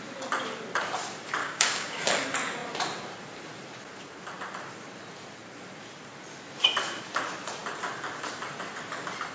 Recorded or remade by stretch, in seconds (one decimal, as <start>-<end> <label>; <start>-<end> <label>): 0.0-1.4 recorded; 1.4-2.0 remade; 2.0-9.3 recorded